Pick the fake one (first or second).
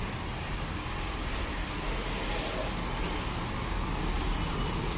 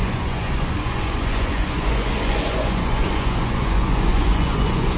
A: second